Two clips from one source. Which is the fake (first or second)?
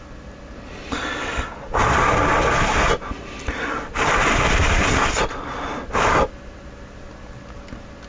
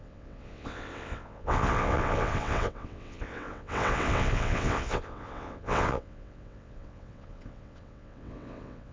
second